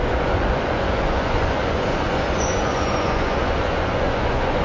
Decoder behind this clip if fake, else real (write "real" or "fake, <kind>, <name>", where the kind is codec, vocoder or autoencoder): fake, vocoder, Vocos